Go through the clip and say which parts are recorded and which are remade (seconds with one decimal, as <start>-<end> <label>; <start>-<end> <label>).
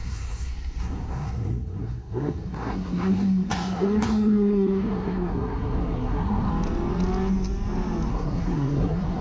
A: 0.0-6.5 remade; 6.5-8.1 recorded; 8.1-9.2 remade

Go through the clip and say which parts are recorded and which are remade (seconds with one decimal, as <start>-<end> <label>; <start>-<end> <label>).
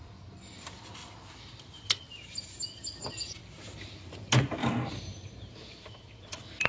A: 0.0-1.0 recorded; 1.0-2.4 remade; 2.4-3.4 recorded; 3.4-4.1 remade; 4.1-4.6 recorded; 4.6-5.9 remade; 5.9-6.7 recorded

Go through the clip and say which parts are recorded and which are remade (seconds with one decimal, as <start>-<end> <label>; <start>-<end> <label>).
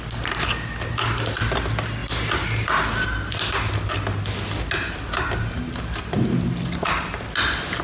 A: 0.0-7.8 recorded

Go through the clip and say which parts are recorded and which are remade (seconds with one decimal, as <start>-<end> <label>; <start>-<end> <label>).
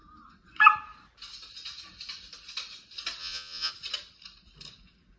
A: 0.0-3.2 recorded; 3.2-3.7 remade; 3.7-5.2 recorded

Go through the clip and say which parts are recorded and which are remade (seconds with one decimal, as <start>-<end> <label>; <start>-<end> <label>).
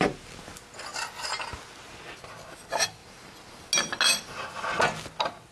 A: 0.0-5.5 recorded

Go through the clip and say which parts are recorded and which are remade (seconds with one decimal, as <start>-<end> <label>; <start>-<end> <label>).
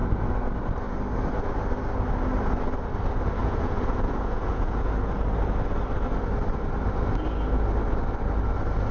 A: 0.0-3.4 recorded; 3.4-4.9 remade; 4.9-8.9 recorded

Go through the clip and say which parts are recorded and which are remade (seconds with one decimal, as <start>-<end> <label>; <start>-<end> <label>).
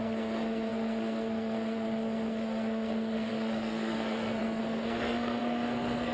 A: 0.0-6.1 remade